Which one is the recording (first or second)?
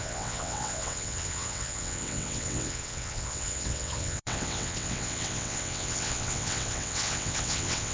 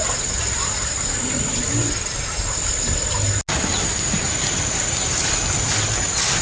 second